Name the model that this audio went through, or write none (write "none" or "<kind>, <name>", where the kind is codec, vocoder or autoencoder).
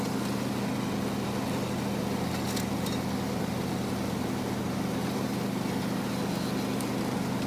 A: none